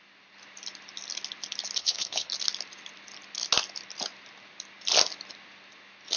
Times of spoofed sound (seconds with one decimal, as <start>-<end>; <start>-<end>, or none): 1.8-2.3

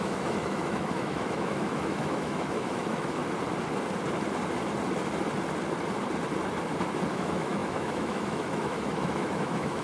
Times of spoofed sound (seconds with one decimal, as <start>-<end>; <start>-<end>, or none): 0.0-3.2; 7.1-9.8